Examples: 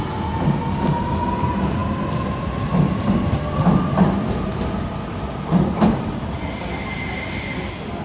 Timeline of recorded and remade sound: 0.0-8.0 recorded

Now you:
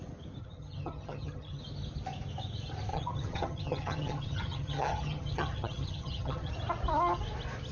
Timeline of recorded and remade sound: 0.0-0.4 recorded; 0.4-1.6 remade; 1.6-2.9 recorded; 2.9-6.5 remade; 6.5-7.7 recorded